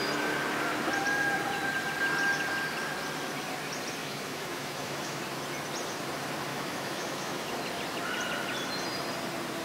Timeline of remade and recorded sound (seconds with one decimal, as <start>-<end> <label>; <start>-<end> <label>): 0.0-4.0 recorded; 4.0-5.2 remade; 5.2-6.5 recorded; 6.5-7.5 remade; 7.5-9.6 recorded